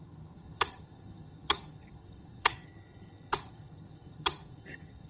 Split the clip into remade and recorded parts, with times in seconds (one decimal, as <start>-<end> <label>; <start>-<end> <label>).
0.0-5.1 remade